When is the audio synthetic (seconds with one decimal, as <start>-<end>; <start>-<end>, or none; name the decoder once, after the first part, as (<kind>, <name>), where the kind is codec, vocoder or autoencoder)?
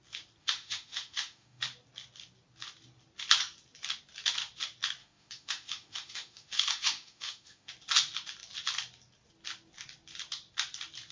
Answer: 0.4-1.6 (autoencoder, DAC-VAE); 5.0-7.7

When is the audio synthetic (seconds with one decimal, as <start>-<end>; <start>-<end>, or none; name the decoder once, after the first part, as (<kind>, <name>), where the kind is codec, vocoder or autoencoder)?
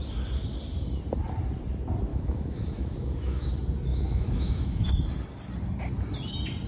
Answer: 2.1-3.5 (autoencoder, DAC-VAE); 3.9-4.9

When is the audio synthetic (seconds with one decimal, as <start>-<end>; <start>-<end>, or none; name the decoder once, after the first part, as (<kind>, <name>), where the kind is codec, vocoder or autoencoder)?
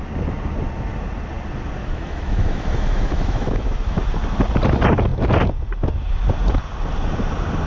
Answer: 1.8-4.0 (autoencoder, DAC-VAE)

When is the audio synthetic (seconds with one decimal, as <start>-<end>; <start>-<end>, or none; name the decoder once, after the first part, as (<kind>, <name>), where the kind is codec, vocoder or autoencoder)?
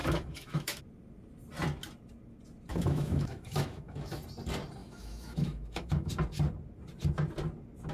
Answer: 0.0-0.8 (autoencoder, DAC-VAE); 2.7-4.2; 4.8-6.1